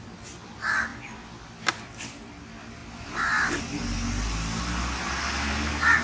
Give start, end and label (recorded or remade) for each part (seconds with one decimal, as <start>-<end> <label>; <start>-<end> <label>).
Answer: 0.0-6.0 recorded